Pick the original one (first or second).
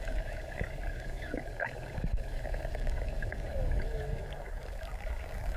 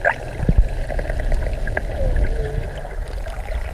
second